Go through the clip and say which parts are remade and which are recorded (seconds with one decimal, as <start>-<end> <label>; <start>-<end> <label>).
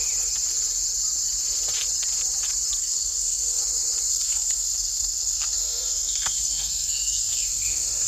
0.0-2.8 recorded; 2.8-3.6 remade; 3.6-4.1 recorded; 4.1-8.1 remade